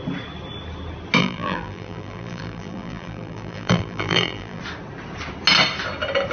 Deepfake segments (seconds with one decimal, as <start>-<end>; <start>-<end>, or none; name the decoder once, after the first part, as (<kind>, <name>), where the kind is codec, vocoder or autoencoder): 1.2-4.6 (vocoder, BigVGAN v2)